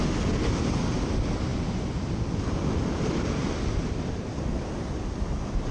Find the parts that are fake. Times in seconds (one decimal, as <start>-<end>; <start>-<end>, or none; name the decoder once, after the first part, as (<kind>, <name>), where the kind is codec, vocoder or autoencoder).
none